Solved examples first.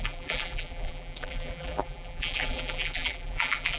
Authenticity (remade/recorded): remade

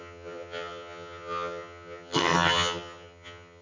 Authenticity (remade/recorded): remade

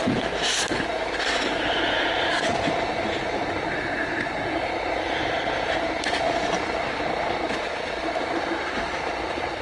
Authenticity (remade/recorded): recorded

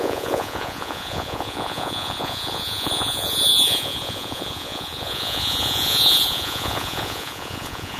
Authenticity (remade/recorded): remade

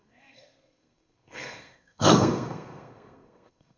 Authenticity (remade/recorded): remade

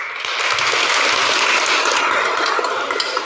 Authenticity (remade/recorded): recorded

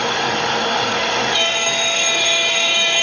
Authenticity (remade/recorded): remade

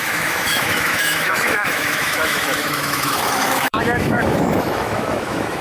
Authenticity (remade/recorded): remade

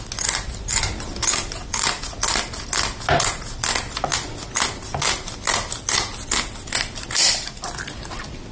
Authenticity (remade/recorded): recorded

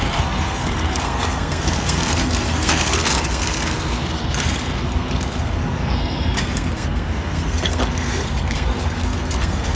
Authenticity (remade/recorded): remade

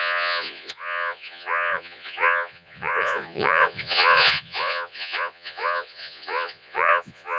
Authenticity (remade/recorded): remade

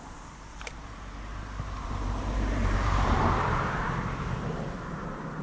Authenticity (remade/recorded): remade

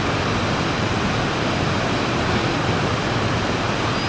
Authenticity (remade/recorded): recorded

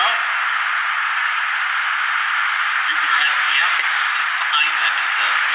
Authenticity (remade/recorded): recorded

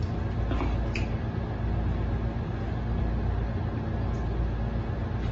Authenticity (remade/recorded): recorded